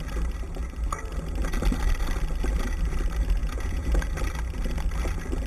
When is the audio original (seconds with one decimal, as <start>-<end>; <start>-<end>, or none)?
0.0-3.4; 4.0-5.5